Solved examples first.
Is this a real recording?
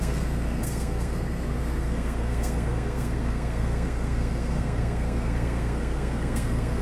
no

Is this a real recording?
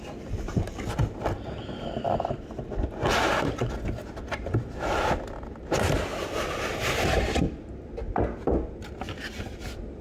yes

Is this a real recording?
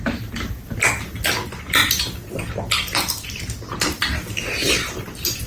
yes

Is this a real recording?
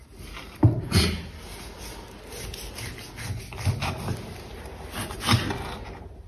yes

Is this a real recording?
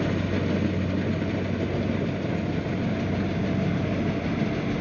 yes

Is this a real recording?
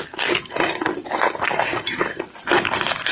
yes